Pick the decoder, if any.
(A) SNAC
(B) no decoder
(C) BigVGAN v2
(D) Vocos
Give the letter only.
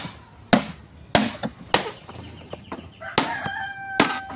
B